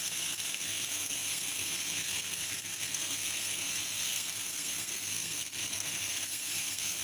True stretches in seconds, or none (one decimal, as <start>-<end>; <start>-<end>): none